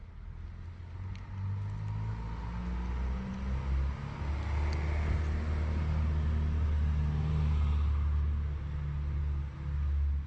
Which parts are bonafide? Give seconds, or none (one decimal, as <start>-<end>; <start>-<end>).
0.0-10.3